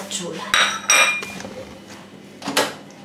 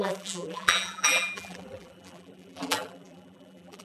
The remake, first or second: second